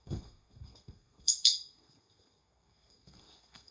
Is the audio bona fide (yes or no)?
no